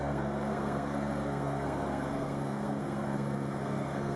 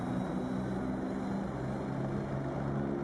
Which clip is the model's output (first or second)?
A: first